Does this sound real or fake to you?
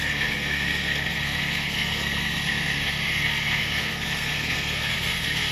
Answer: fake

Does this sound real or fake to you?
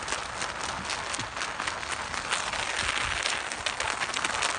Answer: real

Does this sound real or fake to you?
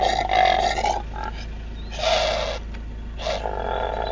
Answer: real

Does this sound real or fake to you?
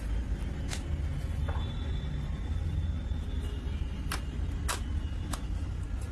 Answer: real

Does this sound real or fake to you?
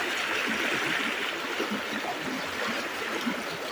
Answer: real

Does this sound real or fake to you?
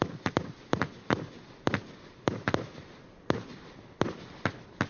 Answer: real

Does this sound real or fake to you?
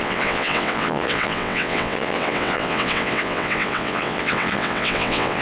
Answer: fake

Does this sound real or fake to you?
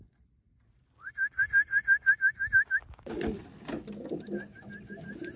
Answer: real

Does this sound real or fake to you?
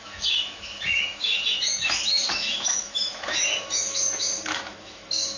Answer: fake